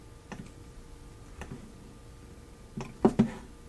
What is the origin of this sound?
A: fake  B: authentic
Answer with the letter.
B